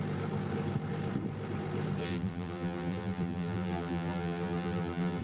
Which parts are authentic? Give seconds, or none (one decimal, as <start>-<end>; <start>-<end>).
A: 0.0-2.0